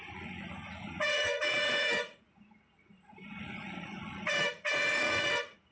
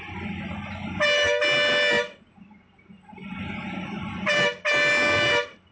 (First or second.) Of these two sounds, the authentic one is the second